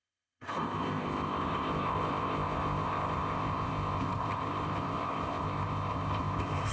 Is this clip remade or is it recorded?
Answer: remade